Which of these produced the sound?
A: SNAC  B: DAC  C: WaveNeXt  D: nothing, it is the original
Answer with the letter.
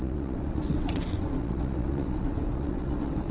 C